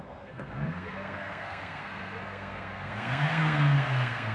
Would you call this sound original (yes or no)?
no